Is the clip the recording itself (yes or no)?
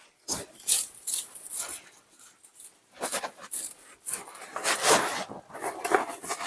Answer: yes